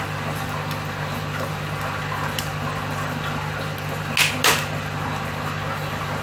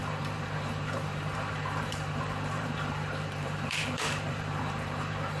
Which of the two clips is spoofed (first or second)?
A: second